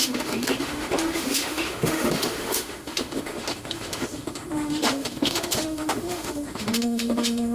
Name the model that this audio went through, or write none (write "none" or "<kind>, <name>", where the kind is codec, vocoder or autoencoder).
autoencoder, DAC-VAE